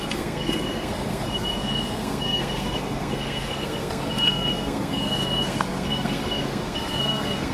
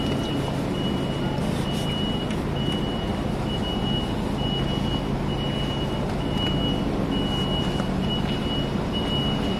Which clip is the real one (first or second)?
second